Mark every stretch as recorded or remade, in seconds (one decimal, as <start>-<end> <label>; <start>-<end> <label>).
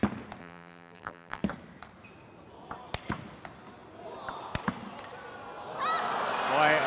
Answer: 0.0-0.4 recorded; 0.4-1.4 remade; 1.4-6.9 recorded